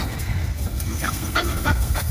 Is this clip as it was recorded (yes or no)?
no